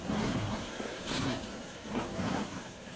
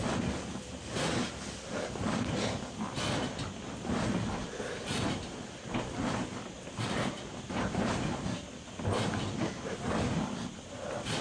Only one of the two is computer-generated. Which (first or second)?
first